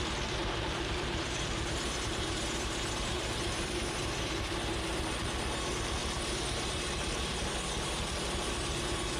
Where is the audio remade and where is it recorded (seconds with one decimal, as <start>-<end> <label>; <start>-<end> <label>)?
0.0-0.4 recorded; 0.4-5.0 remade; 5.0-6.0 recorded; 6.0-6.9 remade; 6.9-9.2 recorded